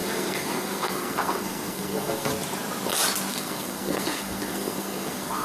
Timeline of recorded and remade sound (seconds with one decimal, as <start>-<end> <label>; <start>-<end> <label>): 0.0-2.3 remade; 2.3-3.3 recorded; 3.3-5.4 remade